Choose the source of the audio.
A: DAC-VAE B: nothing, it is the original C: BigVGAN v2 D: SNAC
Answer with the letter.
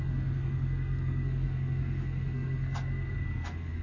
D